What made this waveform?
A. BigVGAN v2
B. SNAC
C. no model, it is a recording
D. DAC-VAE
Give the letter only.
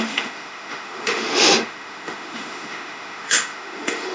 D